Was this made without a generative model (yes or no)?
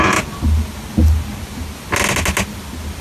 yes